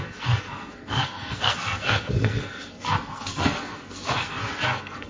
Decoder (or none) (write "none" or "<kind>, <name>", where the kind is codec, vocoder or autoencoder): codec, SNAC